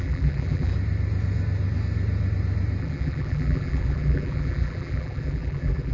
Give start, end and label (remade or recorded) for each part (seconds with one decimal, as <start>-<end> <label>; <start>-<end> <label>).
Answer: 0.0-0.7 remade; 0.7-2.8 recorded; 2.8-5.9 remade